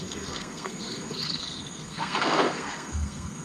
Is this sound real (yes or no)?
no